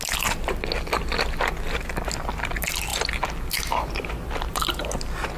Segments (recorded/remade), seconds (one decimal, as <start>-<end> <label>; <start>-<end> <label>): 0.0-5.4 recorded